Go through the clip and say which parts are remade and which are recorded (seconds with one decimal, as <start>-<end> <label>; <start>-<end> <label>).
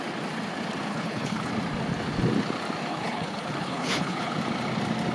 0.0-0.9 recorded; 0.9-1.5 remade; 1.5-2.9 recorded; 2.9-4.3 remade; 4.3-5.1 recorded